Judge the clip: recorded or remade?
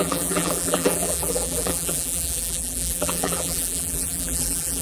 remade